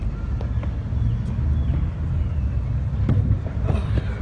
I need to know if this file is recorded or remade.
recorded